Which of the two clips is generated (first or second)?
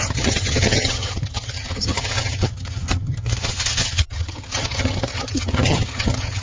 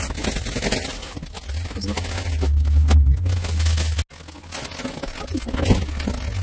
first